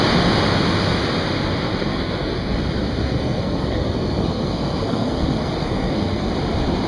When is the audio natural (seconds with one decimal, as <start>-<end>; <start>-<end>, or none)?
0.0-1.8; 2.6-3.0; 6.3-6.9